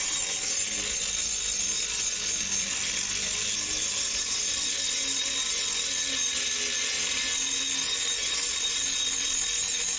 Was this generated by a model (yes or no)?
no